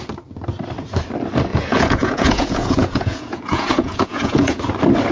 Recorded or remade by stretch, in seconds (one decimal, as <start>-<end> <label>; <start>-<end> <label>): 0.0-1.5 recorded; 1.5-4.6 remade; 4.6-5.1 recorded